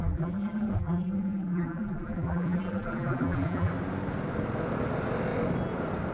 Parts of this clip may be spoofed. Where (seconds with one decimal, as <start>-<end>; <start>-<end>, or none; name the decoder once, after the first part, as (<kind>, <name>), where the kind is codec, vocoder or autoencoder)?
0.0-3.7 (vocoder, BigVGAN v2)